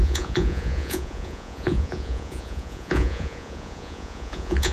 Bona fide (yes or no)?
no